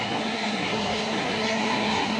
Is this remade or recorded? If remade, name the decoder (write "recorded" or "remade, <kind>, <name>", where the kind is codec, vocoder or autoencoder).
remade, codec, SNAC